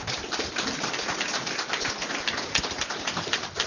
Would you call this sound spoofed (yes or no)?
no